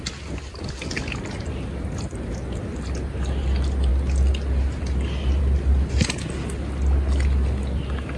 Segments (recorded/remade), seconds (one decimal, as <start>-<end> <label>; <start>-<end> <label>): 0.0-8.2 recorded